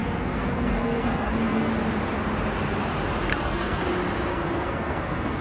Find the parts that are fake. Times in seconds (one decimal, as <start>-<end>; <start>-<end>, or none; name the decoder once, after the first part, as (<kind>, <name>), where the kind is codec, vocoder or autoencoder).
0.0-1.7 (codec, SNAC); 3.3-3.8; 4.3-5.4